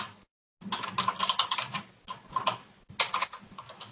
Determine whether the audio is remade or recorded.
recorded